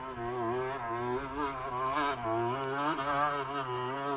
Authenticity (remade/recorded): recorded